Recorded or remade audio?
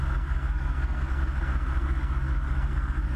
remade